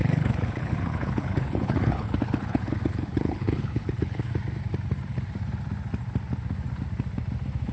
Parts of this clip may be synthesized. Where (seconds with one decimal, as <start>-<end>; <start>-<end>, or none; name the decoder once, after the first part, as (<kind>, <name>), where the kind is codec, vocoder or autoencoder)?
0.0-4.3 (codec, HILCodec)